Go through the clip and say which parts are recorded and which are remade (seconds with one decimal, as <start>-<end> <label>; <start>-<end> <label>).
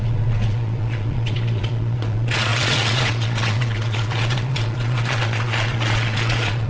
0.0-6.7 remade